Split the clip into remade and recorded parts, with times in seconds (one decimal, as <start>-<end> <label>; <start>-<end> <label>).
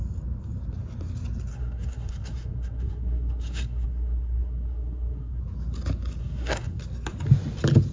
0.0-1.5 recorded; 1.5-5.4 remade; 5.4-6.2 recorded; 6.2-6.8 remade; 6.8-7.9 recorded